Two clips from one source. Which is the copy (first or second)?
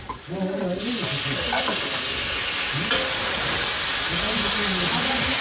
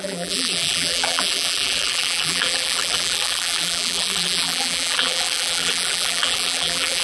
second